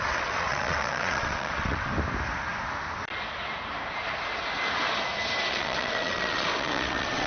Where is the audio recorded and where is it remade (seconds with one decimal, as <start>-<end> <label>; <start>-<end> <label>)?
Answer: 0.0-1.9 remade; 1.9-5.5 recorded; 5.5-7.3 remade